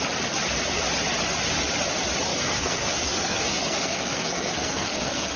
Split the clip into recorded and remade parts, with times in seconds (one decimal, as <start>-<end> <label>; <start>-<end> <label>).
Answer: 0.0-2.3 recorded; 2.3-5.4 remade